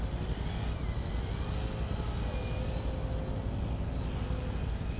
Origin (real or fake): real